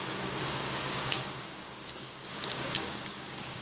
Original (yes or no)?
no